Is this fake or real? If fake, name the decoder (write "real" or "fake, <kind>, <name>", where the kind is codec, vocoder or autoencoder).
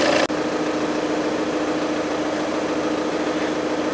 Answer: real